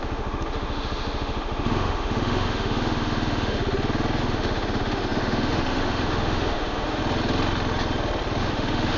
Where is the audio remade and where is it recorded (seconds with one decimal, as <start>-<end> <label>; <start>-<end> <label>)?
0.0-3.6 remade; 3.6-4.2 recorded; 4.2-7.0 remade; 7.0-8.4 recorded; 8.4-9.0 remade